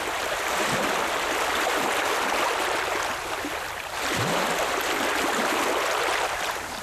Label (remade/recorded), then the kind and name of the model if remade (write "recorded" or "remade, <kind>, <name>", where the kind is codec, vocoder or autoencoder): recorded